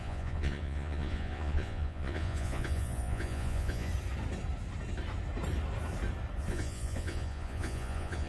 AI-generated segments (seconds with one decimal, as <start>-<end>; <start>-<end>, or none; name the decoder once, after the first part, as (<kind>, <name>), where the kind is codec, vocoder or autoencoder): 0.0-3.9 (vocoder, Vocos); 6.5-8.3